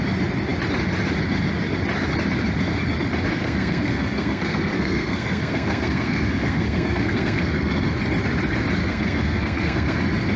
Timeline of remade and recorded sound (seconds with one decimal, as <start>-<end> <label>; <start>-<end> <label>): 0.0-3.3 recorded; 3.3-7.9 remade; 7.9-8.8 recorded; 8.8-10.0 remade; 10.0-10.4 recorded

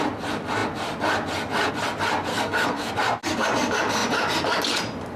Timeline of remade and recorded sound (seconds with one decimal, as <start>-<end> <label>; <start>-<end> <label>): 0.0-2.3 recorded; 2.3-2.9 remade; 2.9-5.2 recorded

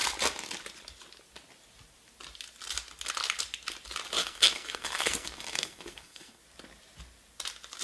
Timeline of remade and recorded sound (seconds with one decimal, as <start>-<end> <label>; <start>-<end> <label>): 0.0-4.2 recorded; 4.2-6.4 remade; 6.4-7.8 recorded